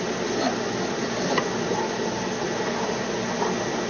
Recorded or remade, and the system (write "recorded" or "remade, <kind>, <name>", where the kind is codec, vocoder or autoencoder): recorded